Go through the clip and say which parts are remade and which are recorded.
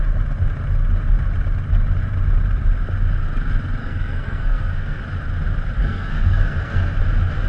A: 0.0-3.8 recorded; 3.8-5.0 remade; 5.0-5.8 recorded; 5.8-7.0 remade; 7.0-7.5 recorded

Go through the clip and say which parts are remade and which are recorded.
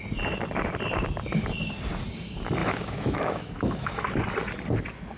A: 0.0-2.6 recorded; 2.6-4.2 remade; 4.2-5.2 recorded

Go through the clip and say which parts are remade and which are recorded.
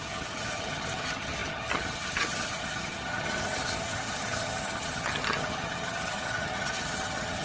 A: 0.0-7.4 remade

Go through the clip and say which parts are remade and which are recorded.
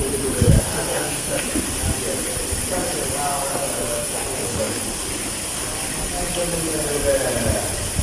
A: 0.0-0.7 recorded; 0.7-1.4 remade; 1.4-3.5 recorded; 3.5-4.8 remade; 4.8-8.0 recorded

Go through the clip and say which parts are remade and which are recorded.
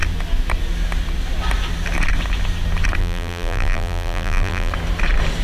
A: 0.0-3.0 recorded; 3.0-4.7 remade; 4.7-5.4 recorded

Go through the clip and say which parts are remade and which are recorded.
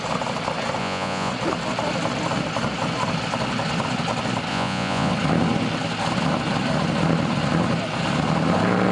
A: 0.0-0.8 recorded; 0.8-1.3 remade; 1.3-4.5 recorded; 4.5-5.1 remade; 5.1-8.9 recorded